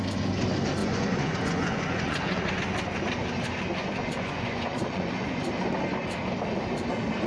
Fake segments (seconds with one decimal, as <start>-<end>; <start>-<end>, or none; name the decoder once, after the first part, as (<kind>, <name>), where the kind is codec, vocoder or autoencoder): 0.8-2.5 (vocoder, Vocos); 3.8-5.4